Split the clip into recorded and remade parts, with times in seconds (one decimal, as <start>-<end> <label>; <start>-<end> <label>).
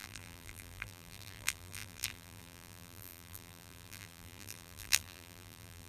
0.0-5.9 remade